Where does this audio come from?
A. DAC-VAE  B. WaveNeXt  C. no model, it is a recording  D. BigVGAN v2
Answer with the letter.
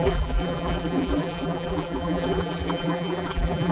D